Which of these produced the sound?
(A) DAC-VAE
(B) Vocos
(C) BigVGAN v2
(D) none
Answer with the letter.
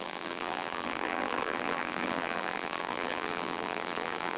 C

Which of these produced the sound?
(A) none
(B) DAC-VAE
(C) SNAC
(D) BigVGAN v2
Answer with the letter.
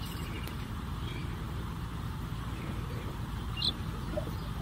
D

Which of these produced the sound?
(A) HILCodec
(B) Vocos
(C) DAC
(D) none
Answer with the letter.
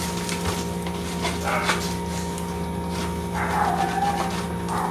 D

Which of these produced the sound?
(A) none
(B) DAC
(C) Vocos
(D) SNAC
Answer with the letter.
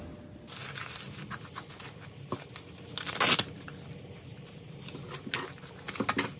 A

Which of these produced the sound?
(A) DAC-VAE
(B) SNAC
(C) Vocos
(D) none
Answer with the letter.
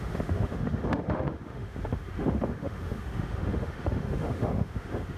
A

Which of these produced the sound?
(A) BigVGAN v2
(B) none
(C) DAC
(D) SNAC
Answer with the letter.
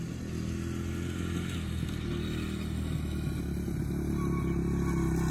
B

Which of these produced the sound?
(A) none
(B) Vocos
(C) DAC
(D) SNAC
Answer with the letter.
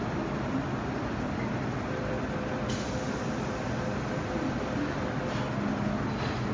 A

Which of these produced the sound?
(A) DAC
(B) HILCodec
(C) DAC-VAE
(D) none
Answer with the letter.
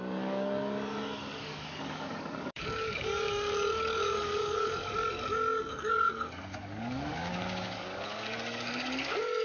A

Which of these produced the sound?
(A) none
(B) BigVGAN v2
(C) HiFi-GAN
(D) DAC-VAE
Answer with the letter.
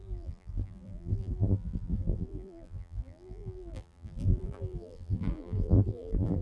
B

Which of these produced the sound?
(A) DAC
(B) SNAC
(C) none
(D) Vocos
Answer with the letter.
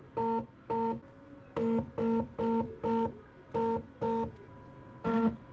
C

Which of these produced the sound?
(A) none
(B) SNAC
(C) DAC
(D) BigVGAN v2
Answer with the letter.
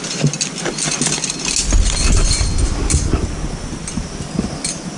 A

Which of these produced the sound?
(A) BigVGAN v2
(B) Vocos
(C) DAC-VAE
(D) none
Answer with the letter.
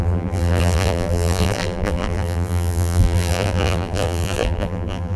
A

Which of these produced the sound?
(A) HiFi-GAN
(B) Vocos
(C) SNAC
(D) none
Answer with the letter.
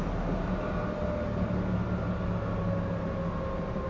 D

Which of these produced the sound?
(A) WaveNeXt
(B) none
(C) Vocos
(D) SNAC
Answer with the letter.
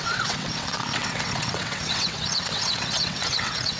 A